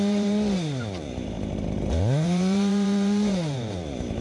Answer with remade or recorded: remade